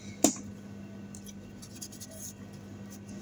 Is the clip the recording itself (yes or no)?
yes